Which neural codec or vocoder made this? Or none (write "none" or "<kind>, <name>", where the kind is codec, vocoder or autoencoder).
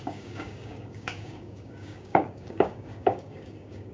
codec, DAC